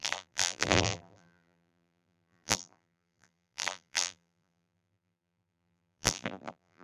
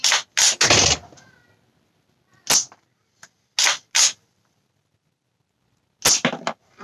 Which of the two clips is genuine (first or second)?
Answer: second